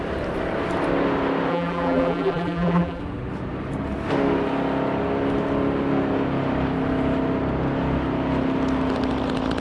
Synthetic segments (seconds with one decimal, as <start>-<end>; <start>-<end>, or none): 1.5-3.0